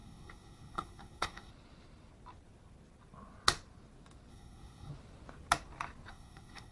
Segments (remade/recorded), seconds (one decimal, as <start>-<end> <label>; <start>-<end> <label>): 0.0-1.5 remade; 1.5-4.3 recorded; 4.3-4.9 remade; 4.9-6.1 recorded; 6.1-6.7 remade